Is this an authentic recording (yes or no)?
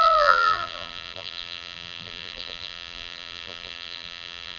no